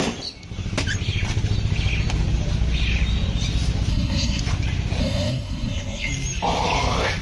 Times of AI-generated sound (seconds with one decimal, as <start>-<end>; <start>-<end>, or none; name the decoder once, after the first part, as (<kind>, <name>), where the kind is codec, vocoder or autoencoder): 3.9-4.4 (codec, SNAC); 5.0-6.1

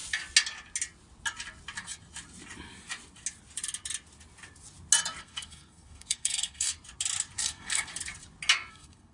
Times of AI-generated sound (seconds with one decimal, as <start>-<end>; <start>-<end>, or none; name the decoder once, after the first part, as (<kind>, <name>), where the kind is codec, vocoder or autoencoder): 5.2-6.7 (codec, SNAC); 7.4-7.9; 8.7-9.1

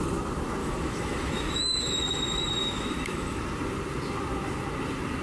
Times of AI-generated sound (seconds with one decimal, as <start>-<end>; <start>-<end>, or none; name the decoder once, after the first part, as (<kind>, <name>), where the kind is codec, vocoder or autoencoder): 0.6-2.0 (autoencoder, DAC-VAE); 2.6-3.4

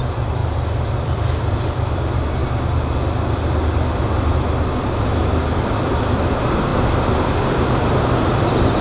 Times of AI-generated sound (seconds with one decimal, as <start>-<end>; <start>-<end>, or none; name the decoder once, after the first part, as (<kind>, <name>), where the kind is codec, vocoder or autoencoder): 0.0-0.4 (vocoder, BigVGAN v2); 0.9-2.4; 4.8-8.8

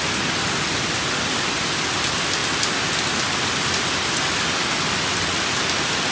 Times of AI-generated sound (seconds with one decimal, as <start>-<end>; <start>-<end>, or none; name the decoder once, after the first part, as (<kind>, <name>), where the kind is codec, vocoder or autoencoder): none

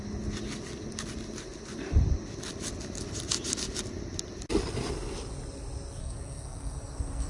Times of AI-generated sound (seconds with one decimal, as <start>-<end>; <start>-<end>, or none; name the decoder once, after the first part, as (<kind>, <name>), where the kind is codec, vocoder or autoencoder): 6.0-7.3 (codec, SNAC)